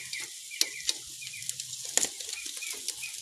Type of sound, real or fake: real